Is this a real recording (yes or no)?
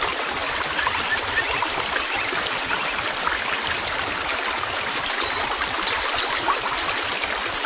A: yes